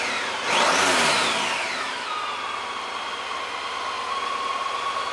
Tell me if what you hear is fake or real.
real